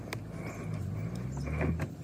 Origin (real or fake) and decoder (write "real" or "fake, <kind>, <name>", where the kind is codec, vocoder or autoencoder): real